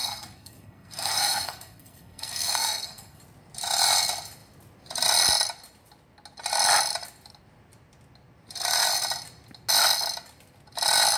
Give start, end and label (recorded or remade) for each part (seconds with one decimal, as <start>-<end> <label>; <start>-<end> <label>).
0.0-3.2 remade; 3.2-11.2 recorded